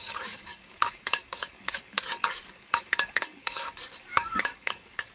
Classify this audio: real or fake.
fake